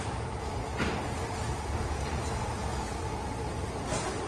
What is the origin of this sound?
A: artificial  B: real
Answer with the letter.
B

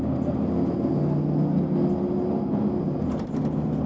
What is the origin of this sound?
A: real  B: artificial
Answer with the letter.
A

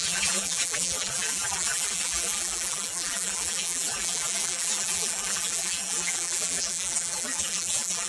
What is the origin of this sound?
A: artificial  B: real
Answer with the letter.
A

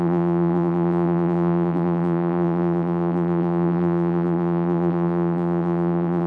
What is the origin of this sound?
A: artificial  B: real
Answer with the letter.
A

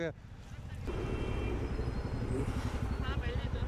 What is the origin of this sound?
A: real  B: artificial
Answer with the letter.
A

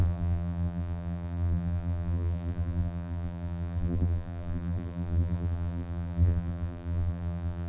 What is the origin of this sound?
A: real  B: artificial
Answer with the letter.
B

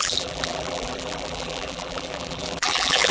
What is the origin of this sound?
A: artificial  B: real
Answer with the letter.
A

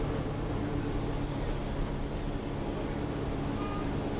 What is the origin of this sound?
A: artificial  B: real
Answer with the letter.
B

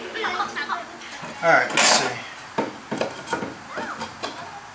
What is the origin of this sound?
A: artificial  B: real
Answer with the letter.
B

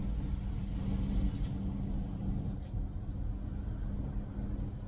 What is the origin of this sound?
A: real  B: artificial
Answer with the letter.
A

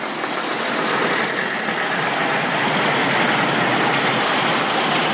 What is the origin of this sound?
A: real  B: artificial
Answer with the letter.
A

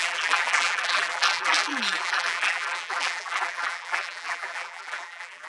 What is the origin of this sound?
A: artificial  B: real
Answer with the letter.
A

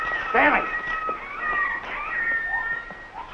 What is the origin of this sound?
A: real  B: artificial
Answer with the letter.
A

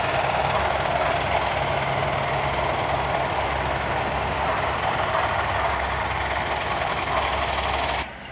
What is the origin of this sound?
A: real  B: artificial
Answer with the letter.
A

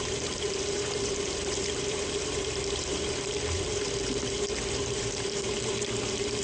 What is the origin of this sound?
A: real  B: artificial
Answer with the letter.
B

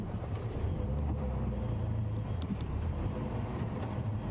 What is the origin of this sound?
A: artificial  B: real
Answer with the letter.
A